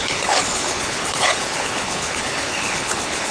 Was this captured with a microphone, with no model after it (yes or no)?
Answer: no